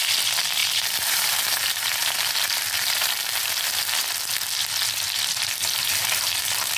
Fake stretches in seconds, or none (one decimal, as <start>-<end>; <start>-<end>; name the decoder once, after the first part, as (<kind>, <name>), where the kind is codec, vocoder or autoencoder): 0.6-4.1 (vocoder, BigVGAN v2)